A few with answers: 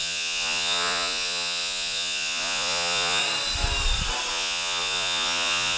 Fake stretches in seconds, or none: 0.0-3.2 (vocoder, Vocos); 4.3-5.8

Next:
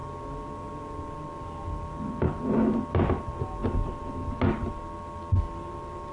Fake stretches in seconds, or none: none

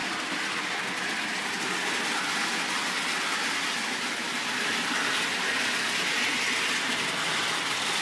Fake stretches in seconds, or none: none

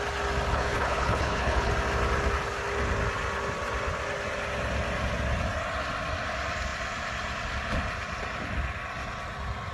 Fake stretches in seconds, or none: 0.5-1.7 (codec, HILCodec)